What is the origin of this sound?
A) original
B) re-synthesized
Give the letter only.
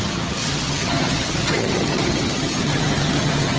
B